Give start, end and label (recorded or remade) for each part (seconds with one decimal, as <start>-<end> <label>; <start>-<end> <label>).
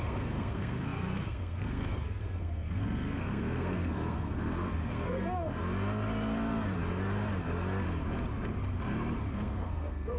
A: 0.0-5.6 remade; 5.6-9.3 recorded; 9.3-10.2 remade